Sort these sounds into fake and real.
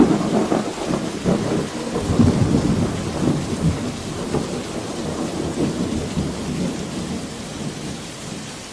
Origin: real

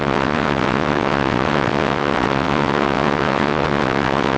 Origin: fake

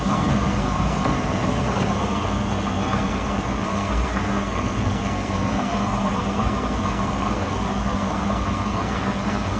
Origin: fake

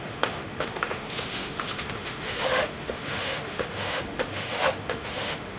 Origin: fake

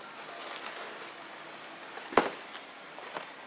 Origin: real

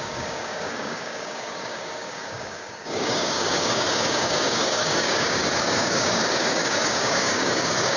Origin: fake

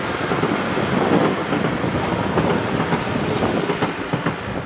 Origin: real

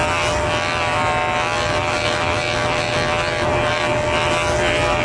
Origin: real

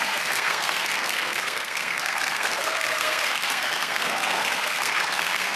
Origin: fake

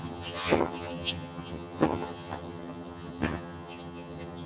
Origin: fake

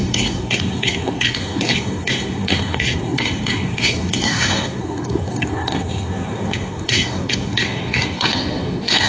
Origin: fake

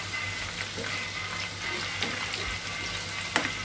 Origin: real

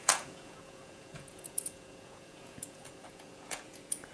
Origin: fake